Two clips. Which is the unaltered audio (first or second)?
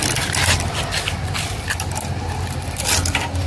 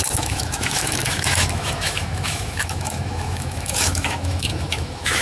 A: first